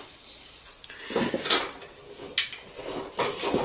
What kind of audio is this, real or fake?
real